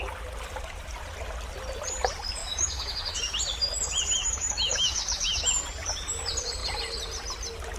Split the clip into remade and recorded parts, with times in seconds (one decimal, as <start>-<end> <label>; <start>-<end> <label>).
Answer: 0.0-2.4 recorded; 2.4-3.3 remade; 3.3-4.2 recorded; 4.2-5.5 remade; 5.5-7.8 recorded